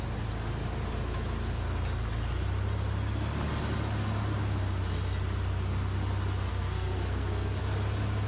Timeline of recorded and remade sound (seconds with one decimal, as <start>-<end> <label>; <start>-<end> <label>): 0.0-6.5 recorded; 6.5-7.6 remade; 7.6-8.3 recorded